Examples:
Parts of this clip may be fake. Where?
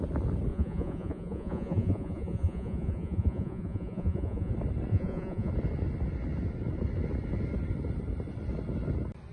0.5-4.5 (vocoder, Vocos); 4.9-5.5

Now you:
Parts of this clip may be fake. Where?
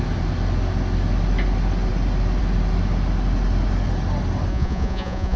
4.5-5.4 (vocoder, Vocos)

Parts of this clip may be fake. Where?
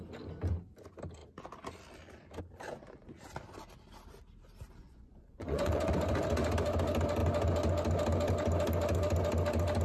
4.8-5.9 (vocoder, Vocos)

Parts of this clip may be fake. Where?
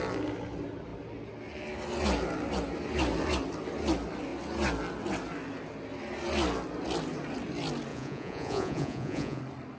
7.9-9.4 (vocoder, Vocos)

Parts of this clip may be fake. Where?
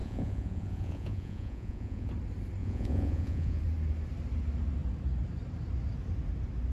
0.0-2.1 (vocoder, Vocos); 2.6-3.6